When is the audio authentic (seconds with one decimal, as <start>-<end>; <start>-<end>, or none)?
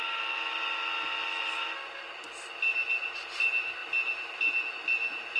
0.0-5.4